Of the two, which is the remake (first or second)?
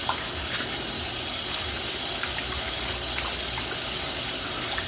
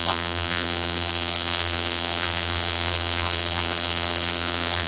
second